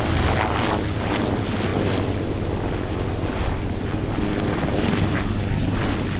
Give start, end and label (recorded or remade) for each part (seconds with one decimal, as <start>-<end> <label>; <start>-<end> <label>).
0.0-6.2 recorded